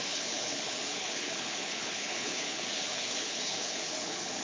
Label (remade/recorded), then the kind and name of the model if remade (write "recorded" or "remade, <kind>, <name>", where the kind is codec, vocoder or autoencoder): remade, codec, HILCodec